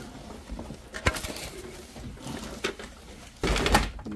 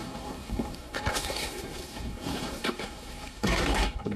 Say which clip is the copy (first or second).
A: second